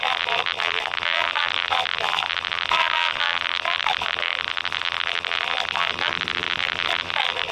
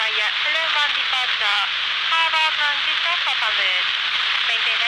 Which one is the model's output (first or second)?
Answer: first